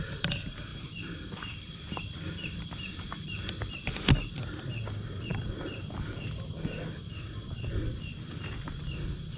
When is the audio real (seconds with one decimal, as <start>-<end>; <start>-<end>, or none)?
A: 0.0-9.4